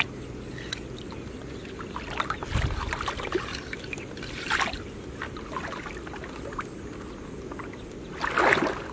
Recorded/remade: recorded